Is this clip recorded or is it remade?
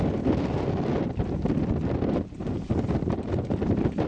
recorded